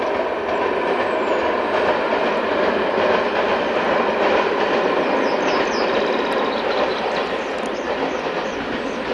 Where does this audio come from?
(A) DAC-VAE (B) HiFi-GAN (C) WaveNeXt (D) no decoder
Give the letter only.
D